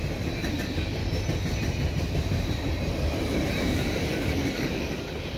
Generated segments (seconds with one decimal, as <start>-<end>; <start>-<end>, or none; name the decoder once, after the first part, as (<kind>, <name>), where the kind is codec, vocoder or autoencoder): 0.5-1.0 (codec, DAC); 3.6-5.4